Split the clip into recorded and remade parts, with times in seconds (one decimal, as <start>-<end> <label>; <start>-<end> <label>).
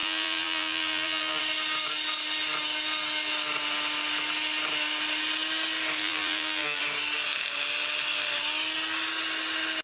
0.0-1.4 remade; 1.4-6.0 recorded; 6.0-6.8 remade; 6.8-9.8 recorded